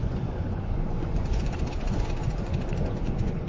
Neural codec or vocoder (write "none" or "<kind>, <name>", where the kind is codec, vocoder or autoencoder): vocoder, Vocos